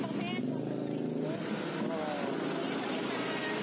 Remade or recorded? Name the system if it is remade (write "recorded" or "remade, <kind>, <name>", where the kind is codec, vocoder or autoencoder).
recorded